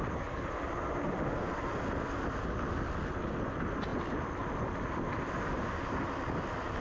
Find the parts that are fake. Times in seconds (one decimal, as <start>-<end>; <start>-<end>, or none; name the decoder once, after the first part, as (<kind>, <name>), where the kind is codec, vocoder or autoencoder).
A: none